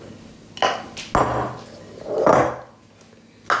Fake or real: real